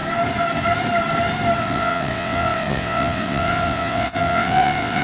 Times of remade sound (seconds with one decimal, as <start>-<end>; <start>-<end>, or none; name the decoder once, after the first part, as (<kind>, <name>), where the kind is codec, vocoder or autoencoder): 1.6-5.0 (vocoder, WaveNeXt)